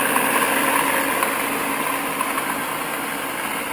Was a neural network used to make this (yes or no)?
no